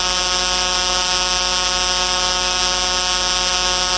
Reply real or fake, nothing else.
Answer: real